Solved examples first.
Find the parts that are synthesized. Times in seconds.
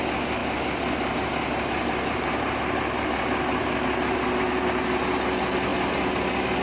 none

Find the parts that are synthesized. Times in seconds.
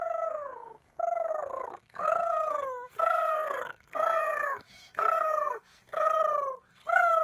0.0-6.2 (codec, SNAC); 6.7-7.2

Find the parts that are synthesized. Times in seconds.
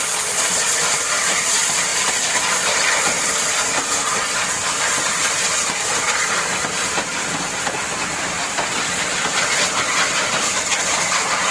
none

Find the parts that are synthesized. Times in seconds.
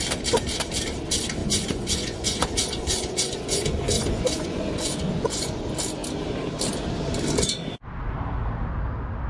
1.4-5.6 (vocoder, Vocos)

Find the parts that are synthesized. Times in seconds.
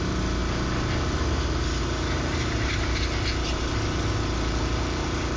none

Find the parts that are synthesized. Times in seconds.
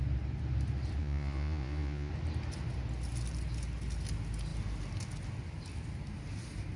1.0-2.1 (vocoder, Vocos)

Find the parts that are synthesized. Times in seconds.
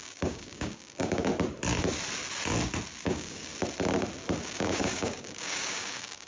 0.0-1.3 (codec, DAC); 3.0-3.5; 4.4-6.3